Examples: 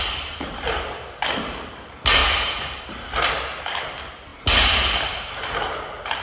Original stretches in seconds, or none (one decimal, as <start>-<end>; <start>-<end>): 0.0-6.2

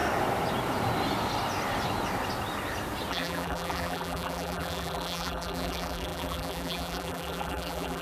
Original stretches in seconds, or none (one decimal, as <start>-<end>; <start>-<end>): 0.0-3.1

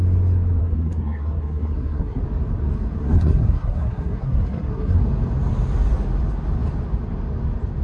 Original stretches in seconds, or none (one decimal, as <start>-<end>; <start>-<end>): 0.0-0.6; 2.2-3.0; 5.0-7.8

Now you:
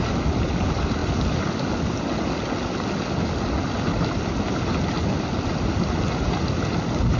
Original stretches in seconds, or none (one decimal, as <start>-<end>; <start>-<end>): 0.0-7.2

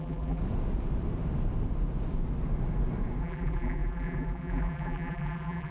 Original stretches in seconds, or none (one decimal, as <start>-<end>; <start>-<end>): 0.4-3.2

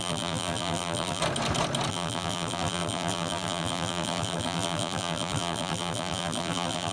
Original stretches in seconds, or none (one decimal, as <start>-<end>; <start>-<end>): 1.2-1.9

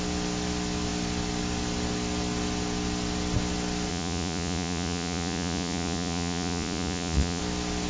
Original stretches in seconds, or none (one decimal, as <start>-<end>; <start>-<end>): 0.0-3.9; 7.4-7.9